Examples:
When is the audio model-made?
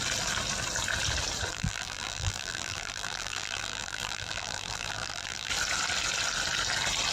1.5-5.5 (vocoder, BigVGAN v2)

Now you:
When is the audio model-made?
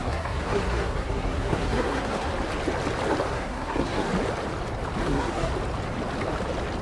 0.0-2.3 (codec, SNAC); 3.3-4.1; 5.0-5.5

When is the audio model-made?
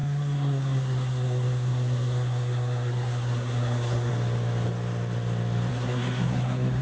0.0-4.1 (codec, SNAC); 5.7-6.8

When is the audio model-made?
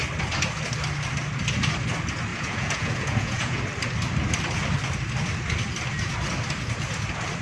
2.3-3.6 (vocoder, Vocos)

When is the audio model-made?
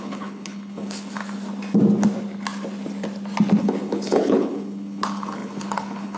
0.0-1.2 (codec, HILCodec); 3.6-6.2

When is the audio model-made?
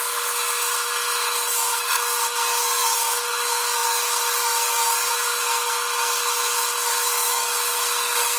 0.0-8.4 (codec, SNAC)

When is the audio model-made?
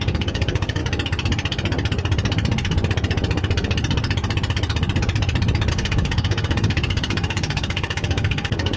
0.0-0.8 (codec, DAC); 5.7-8.8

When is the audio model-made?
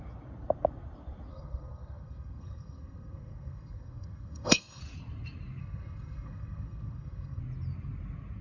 1.3-4.8 (codec, SNAC); 5.6-7.4